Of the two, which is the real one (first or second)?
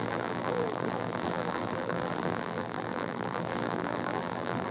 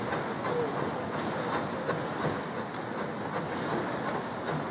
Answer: second